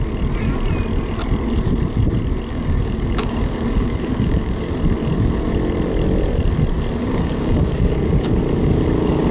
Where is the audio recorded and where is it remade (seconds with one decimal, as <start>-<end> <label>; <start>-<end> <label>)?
0.0-2.5 recorded; 2.5-4.7 remade; 4.7-7.0 recorded; 7.0-8.4 remade; 8.4-9.3 recorded